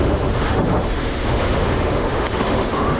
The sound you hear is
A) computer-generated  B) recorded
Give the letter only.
A